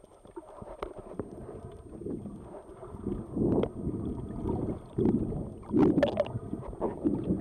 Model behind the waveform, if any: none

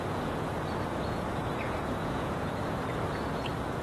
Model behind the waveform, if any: vocoder, Vocos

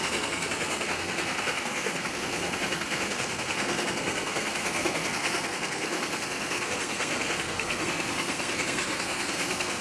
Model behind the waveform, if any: codec, SNAC